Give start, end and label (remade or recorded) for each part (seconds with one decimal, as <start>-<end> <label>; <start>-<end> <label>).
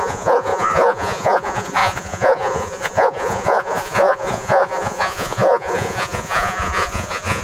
0.0-7.4 remade